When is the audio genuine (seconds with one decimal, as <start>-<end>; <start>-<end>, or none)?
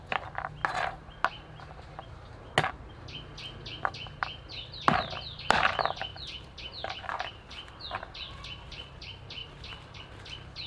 0.0-6.1; 7.8-9.4; 10.0-10.7